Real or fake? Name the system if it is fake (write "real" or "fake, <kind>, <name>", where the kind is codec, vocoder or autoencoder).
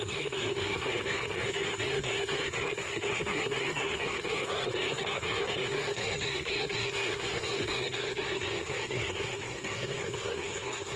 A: fake, codec, SNAC